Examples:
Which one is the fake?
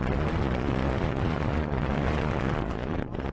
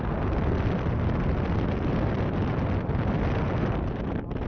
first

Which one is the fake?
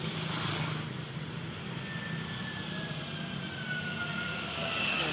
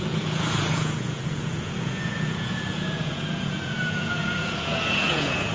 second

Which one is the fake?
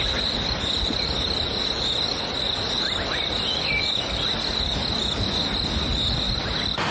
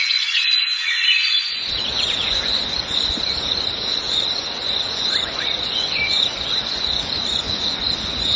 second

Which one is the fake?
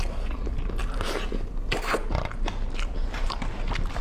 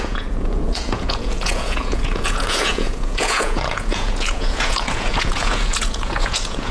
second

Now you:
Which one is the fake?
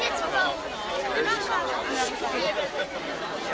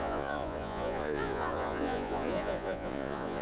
second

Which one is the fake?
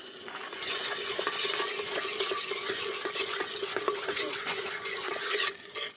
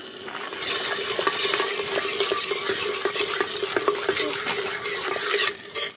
first